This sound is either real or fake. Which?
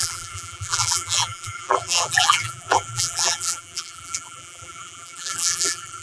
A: fake